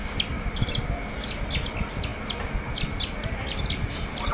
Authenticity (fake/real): real